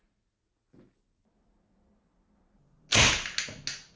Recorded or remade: recorded